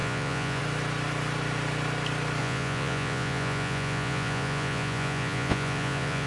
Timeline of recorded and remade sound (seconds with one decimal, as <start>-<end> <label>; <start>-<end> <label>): 0.0-0.6 remade; 0.6-2.4 recorded; 2.4-6.3 remade